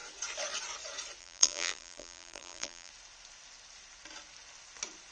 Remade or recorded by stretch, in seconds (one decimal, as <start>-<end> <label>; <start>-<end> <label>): 0.0-1.2 recorded; 1.2-2.9 remade; 2.9-5.1 recorded